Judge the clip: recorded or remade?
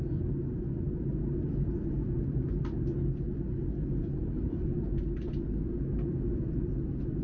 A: recorded